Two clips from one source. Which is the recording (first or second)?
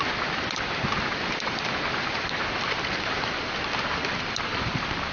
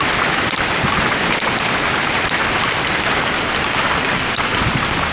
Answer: second